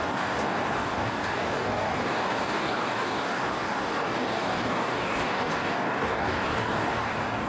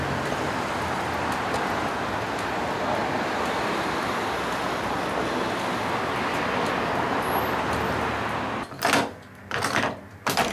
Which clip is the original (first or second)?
second